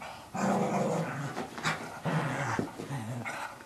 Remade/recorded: recorded